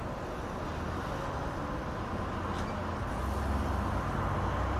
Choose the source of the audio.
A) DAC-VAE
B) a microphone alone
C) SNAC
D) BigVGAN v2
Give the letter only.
B